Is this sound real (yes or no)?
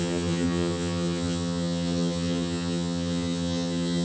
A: no